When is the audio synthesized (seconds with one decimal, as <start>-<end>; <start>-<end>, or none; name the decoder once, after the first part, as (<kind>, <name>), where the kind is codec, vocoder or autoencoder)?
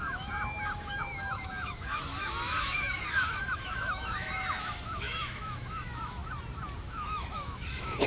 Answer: 0.0-6.2 (autoencoder, DAC-VAE); 6.8-8.1